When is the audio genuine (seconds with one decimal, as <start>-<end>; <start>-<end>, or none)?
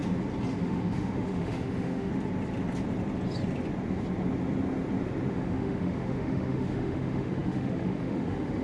0.0-0.6; 2.1-5.3